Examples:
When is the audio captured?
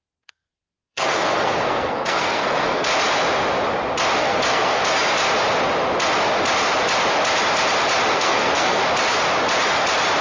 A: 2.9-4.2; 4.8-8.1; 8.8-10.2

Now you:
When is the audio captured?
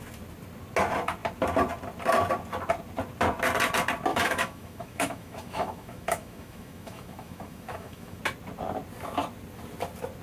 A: 0.0-4.1; 8.2-10.2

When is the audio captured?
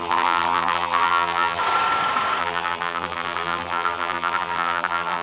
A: 1.6-2.4